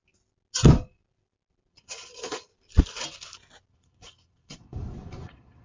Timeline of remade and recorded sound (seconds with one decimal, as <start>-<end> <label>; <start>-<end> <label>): 0.0-1.7 recorded; 1.7-2.5 remade; 2.5-3.7 recorded; 3.7-5.6 remade